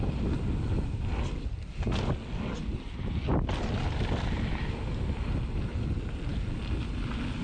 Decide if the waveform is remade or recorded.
recorded